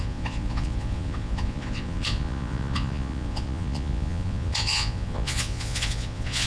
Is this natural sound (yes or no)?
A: no